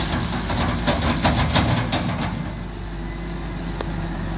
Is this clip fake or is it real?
real